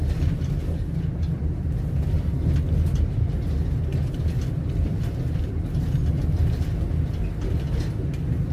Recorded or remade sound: recorded